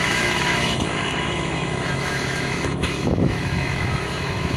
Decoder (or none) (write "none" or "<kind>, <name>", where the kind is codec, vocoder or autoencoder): autoencoder, DAC-VAE